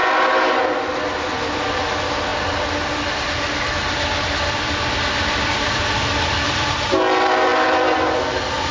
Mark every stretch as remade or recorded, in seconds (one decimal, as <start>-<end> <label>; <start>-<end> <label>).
0.0-8.7 recorded